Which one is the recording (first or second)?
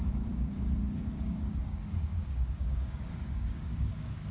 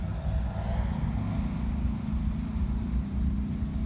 second